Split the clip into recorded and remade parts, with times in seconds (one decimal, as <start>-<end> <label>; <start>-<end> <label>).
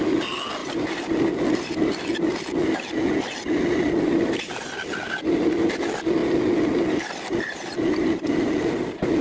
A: 0.0-9.2 recorded